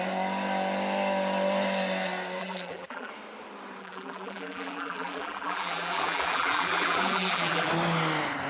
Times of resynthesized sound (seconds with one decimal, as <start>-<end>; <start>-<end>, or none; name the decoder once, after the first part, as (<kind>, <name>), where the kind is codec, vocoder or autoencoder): 2.4-3.1 (vocoder, BigVGAN v2); 3.8-7.7

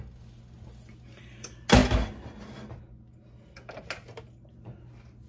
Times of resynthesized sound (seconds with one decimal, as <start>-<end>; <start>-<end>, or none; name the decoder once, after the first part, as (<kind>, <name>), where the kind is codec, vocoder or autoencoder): none

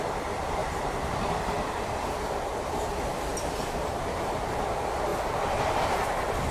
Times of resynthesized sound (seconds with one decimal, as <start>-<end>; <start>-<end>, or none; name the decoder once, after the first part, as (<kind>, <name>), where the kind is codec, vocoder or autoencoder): 0.6-1.4 (vocoder, BigVGAN v2); 5.1-5.8

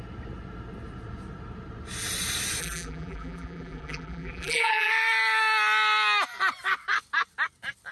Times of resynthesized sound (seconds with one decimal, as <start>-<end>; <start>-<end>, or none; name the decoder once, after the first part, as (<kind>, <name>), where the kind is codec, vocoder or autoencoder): 2.6-4.9 (vocoder, BigVGAN v2)

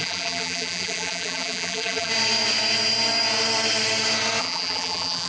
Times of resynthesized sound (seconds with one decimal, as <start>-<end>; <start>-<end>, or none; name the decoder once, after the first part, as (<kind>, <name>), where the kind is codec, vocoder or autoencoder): 0.0-2.1 (vocoder, BigVGAN v2); 4.4-5.3

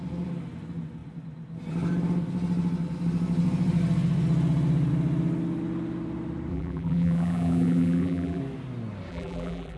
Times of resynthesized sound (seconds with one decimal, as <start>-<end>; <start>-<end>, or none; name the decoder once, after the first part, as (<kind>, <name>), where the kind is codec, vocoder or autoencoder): 6.5-8.4 (vocoder, BigVGAN v2); 9.1-9.8

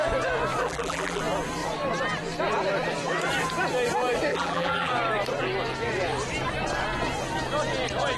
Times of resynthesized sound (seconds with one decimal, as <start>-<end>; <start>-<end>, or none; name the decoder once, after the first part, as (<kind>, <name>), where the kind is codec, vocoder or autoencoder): 0.6-1.2 (vocoder, BigVGAN v2); 4.3-4.9

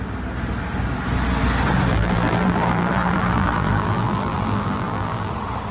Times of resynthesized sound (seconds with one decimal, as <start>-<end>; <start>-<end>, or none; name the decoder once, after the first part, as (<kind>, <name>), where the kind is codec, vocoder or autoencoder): 1.9-5.3 (vocoder, BigVGAN v2)